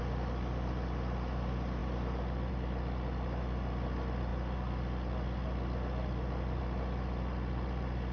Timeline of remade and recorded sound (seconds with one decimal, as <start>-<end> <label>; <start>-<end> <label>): 0.0-8.1 recorded